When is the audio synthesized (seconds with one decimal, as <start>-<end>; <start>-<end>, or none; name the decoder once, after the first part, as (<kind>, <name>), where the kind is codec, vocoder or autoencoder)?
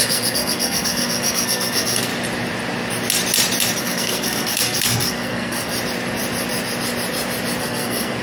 0.0-2.1 (codec, SNAC); 3.8-5.7; 7.6-8.2